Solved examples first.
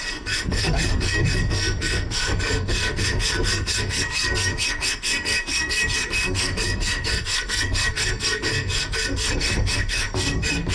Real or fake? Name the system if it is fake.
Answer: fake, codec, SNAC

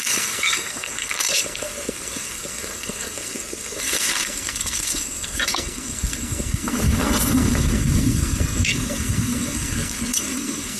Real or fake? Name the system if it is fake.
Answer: fake, codec, SNAC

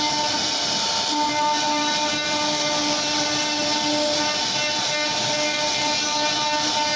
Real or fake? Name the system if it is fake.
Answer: real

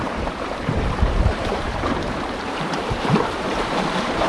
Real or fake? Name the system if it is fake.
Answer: fake, vocoder, BigVGAN v2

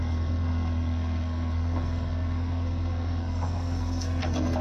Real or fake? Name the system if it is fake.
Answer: fake, codec, SNAC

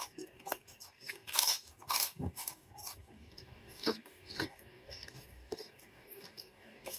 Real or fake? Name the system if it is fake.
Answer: fake, codec, DAC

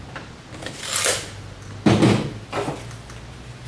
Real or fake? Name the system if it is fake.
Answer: real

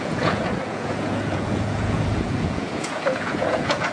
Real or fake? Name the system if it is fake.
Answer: fake, vocoder, Vocos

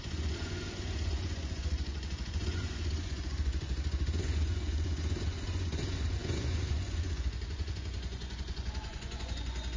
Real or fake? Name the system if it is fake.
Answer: fake, vocoder, Vocos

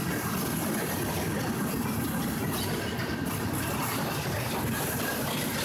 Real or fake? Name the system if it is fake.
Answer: real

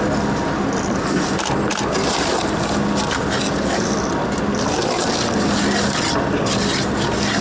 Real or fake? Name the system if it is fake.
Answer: real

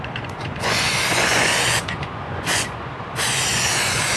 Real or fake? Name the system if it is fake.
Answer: fake, vocoder, Vocos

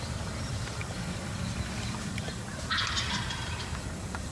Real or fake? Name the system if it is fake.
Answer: fake, vocoder, BigVGAN v2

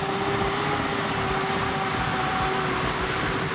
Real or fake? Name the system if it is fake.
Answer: real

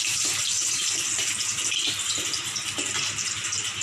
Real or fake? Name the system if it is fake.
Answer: real